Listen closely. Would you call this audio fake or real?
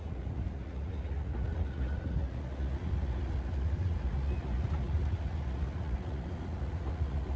fake